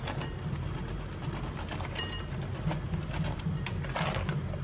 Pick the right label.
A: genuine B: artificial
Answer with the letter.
A